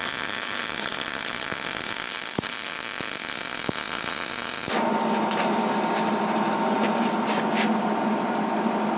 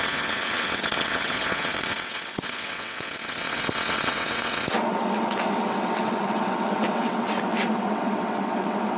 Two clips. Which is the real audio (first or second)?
first